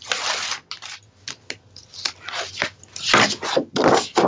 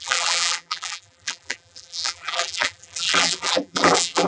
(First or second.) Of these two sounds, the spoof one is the second